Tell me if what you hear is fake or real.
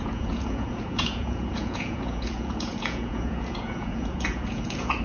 fake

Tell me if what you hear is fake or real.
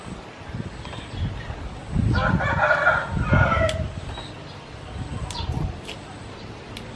real